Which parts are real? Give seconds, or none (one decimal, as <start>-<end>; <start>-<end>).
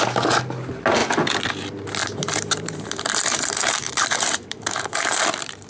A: 0.0-2.0; 5.2-5.7